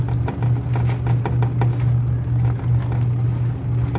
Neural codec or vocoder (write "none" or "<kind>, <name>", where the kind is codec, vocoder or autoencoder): none